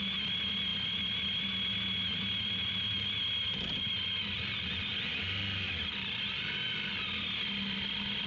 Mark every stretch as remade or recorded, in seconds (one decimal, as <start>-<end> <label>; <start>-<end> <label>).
0.0-8.3 recorded